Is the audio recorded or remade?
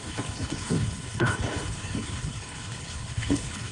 remade